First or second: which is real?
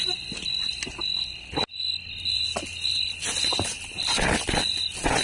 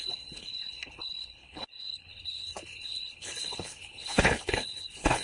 first